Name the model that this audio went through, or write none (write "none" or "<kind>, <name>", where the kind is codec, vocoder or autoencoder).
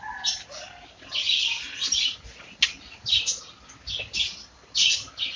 none